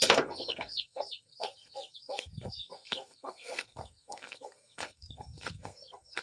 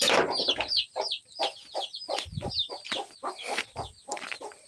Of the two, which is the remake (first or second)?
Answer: first